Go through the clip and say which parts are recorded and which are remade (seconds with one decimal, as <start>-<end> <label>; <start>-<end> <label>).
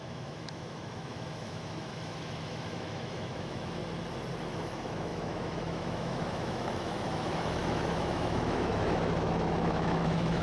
0.0-3.8 remade; 3.8-4.4 recorded; 4.4-10.4 remade